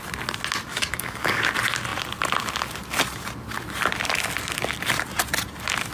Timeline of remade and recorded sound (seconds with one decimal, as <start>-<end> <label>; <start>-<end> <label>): 0.0-0.7 recorded; 0.7-1.4 remade; 1.4-5.9 recorded